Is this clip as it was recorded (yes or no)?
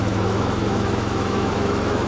no